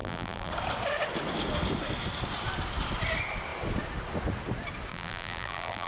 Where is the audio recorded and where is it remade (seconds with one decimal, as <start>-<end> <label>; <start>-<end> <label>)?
0.0-0.5 remade; 0.5-4.9 recorded; 4.9-5.9 remade

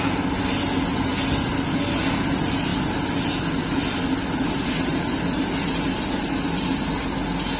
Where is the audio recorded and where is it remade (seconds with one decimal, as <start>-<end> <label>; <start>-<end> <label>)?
0.0-1.1 recorded; 1.1-2.1 remade; 2.1-4.9 recorded; 4.9-6.2 remade; 6.2-7.6 recorded

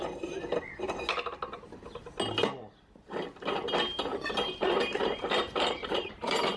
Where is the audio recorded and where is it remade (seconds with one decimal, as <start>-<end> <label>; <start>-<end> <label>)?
0.0-4.1 recorded; 4.1-6.6 remade

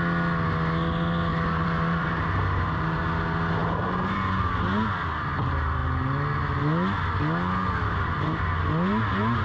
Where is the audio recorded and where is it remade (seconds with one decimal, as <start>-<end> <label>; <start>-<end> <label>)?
0.0-1.3 recorded; 1.3-3.0 remade; 3.0-3.6 recorded; 3.6-4.4 remade; 4.4-9.4 recorded

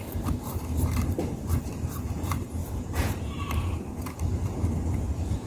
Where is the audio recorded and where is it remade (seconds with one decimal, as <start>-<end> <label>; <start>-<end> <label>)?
0.0-5.5 remade

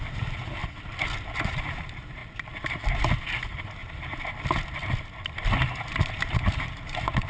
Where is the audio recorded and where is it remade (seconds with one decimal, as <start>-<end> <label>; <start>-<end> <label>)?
0.0-0.6 remade; 0.6-1.4 recorded; 1.4-2.2 remade; 2.2-3.2 recorded; 3.2-3.8 remade; 3.8-6.1 recorded; 6.1-7.3 remade

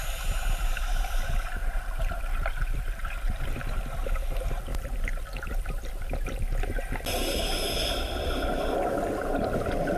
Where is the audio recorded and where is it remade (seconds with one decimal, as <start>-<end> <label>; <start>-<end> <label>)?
0.0-1.6 recorded; 1.6-3.8 remade; 3.8-10.0 recorded